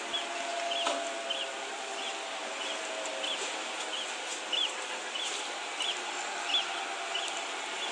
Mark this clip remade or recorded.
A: recorded